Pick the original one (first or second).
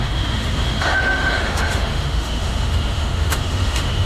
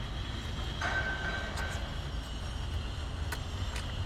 second